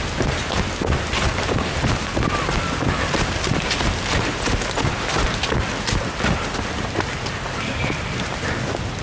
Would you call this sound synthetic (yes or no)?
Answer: no